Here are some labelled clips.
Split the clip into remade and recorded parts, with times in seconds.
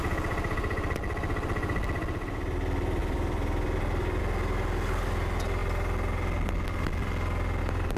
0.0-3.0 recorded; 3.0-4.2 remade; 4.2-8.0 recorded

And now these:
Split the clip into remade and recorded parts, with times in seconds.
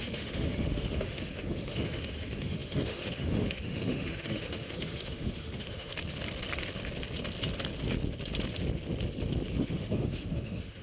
0.0-5.9 remade; 5.9-9.5 recorded; 9.5-10.8 remade